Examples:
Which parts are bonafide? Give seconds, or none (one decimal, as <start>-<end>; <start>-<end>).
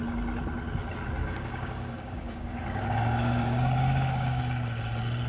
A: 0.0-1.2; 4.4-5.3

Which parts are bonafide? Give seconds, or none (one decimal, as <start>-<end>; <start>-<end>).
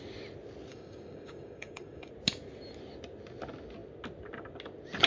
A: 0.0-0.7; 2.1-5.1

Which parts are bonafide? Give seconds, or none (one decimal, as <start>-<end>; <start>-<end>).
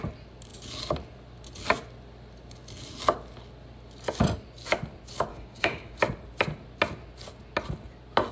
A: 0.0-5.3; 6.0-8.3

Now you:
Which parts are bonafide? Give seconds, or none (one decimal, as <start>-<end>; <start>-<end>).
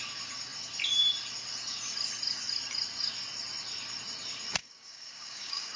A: 0.0-4.6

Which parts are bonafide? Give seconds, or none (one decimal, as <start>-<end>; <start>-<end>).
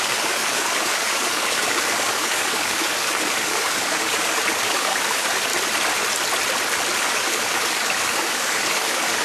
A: 5.5-7.0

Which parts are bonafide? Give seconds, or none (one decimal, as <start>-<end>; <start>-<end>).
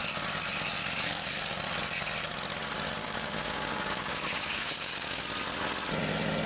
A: 0.0-3.0; 5.2-6.5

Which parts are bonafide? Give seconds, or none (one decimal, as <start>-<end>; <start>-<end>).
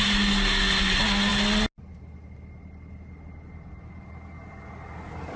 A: 0.0-5.4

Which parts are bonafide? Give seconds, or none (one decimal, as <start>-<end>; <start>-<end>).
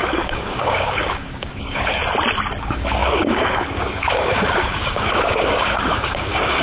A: 2.0-2.6